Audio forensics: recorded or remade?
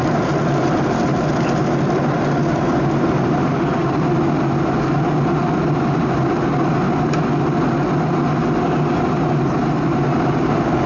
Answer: recorded